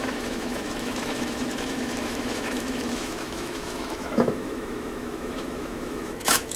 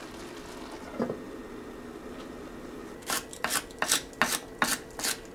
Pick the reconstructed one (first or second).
first